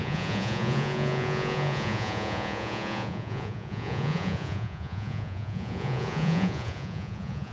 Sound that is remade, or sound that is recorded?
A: remade